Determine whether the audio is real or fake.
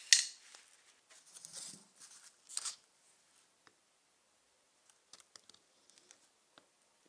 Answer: real